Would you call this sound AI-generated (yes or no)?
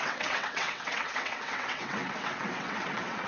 yes